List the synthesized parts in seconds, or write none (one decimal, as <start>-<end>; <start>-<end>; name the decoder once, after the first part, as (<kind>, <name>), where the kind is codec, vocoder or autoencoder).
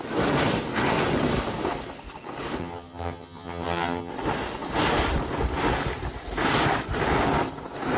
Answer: 2.6-4.1 (vocoder, HiFi-GAN)